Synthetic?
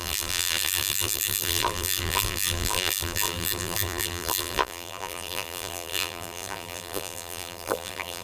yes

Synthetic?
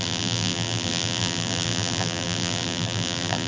yes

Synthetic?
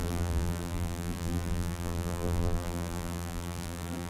yes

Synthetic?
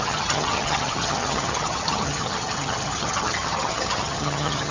yes